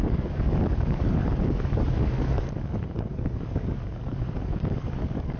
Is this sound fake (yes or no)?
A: yes